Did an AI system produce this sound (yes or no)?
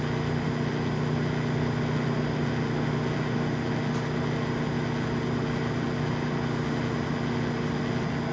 no